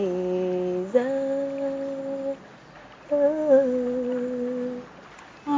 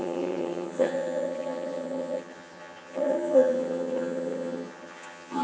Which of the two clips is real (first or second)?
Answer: first